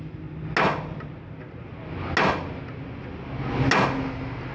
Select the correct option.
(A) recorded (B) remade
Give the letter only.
A